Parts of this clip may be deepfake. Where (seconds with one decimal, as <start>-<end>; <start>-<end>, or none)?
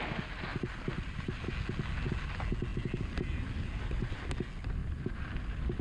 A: 0.5-1.5; 4.8-5.8